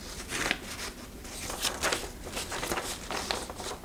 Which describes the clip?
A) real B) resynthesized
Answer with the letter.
A